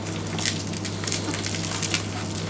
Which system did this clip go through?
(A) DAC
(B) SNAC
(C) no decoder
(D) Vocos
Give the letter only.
C